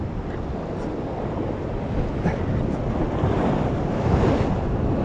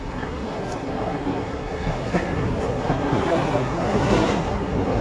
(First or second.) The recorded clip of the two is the first